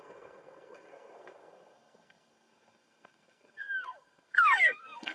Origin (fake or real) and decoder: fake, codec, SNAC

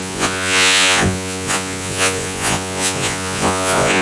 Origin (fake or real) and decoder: fake, vocoder, Vocos